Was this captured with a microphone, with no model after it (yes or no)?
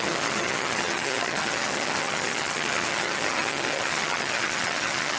no